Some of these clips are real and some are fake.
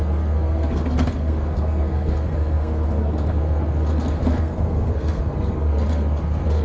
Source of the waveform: fake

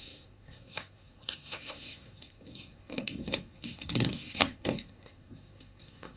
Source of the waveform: fake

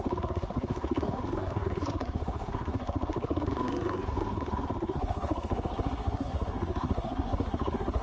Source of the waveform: fake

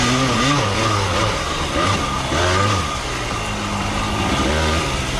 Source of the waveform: real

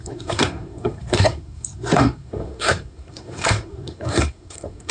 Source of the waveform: fake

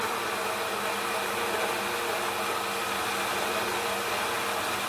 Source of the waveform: real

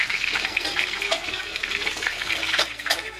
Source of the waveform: fake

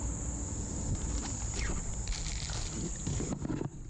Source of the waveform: real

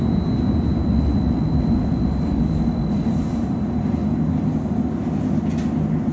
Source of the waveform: real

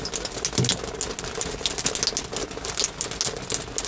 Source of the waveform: real